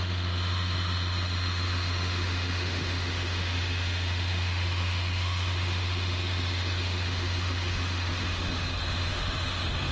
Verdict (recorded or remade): remade